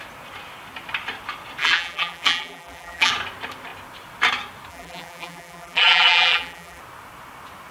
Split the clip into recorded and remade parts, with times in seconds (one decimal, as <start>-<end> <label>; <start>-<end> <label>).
0.0-1.6 recorded; 1.6-3.1 remade; 3.1-4.7 recorded; 4.7-6.8 remade; 6.8-7.7 recorded